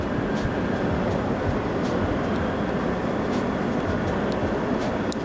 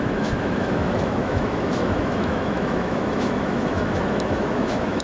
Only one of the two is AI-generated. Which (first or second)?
second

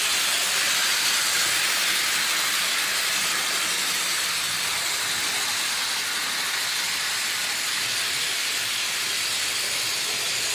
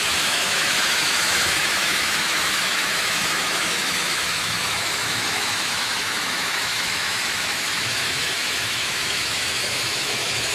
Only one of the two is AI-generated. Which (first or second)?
second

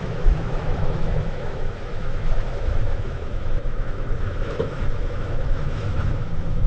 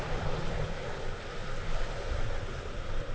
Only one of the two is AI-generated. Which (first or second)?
first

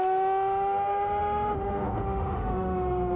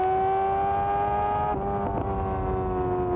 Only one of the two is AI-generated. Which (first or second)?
first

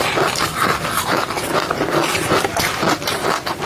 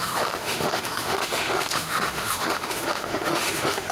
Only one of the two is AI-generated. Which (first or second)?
second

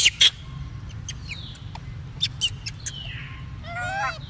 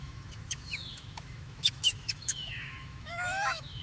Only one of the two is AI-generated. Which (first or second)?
second